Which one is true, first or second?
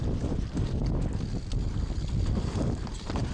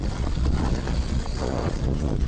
first